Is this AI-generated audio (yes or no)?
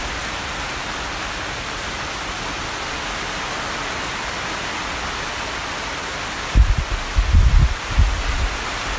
no